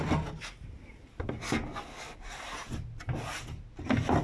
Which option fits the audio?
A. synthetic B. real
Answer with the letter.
B